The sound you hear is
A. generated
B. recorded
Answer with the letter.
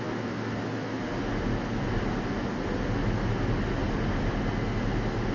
B